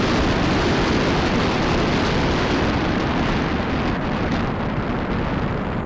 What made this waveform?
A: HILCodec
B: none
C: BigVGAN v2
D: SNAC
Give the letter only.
B